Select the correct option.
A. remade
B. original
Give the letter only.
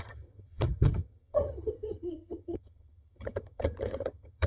A